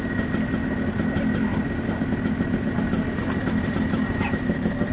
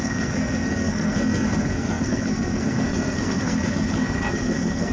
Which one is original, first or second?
first